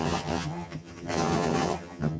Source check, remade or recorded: remade